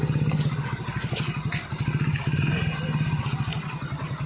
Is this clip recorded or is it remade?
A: recorded